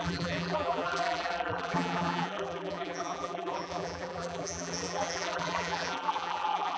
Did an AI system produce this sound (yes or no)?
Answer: yes